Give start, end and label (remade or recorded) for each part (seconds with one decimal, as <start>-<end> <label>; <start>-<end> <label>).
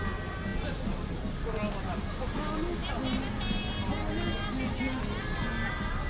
0.0-6.1 recorded